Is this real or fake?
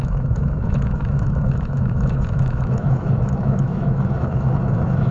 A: fake